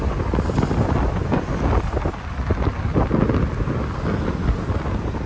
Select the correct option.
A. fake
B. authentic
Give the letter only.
B